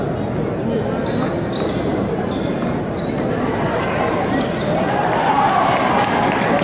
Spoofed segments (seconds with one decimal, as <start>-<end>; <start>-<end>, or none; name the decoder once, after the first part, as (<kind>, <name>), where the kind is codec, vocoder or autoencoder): 1.9-5.8 (vocoder, BigVGAN v2)